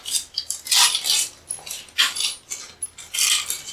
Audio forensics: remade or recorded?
recorded